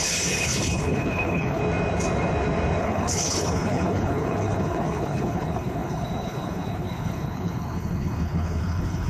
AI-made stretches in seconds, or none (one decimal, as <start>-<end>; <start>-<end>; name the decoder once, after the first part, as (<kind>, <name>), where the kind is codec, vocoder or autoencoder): 0.0-1.6 (codec, HILCodec); 2.8-9.1